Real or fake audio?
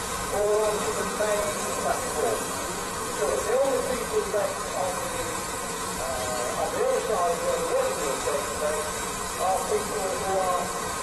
fake